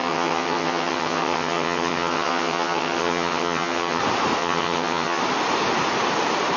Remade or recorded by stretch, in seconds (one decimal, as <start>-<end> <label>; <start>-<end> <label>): 0.0-4.0 remade; 4.0-4.4 recorded; 4.4-5.2 remade; 5.2-6.6 recorded